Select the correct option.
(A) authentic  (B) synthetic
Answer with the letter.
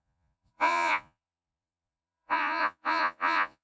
B